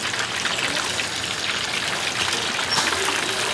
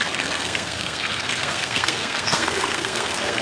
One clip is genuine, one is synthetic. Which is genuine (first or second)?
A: first